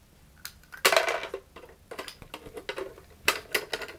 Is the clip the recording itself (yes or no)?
yes